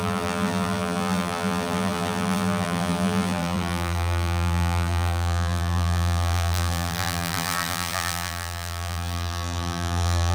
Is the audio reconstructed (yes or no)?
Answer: yes